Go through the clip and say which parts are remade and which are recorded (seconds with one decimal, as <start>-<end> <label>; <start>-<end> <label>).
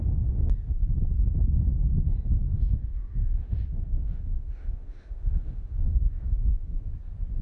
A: 0.0-2.5 recorded; 2.5-6.9 remade; 6.9-7.4 recorded